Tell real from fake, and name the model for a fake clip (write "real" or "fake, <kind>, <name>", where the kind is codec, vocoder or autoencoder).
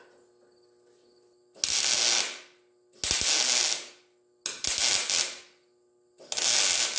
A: real